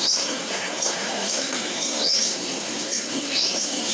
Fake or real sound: fake